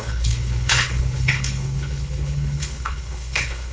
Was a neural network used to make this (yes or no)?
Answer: yes